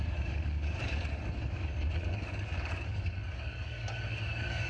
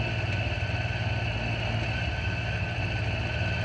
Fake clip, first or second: first